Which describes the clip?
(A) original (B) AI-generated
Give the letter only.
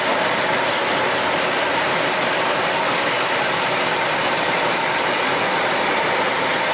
A